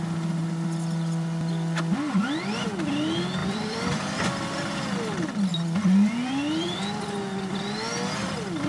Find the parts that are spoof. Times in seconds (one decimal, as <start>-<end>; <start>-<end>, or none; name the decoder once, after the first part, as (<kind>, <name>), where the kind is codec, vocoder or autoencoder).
3.4-4.6 (vocoder, BigVGAN v2); 5.5-6.8